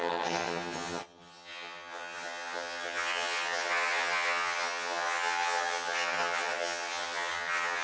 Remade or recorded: remade